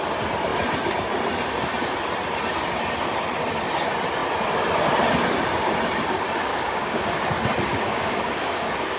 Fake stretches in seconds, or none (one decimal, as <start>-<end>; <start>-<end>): 6.5-7.2; 7.7-9.0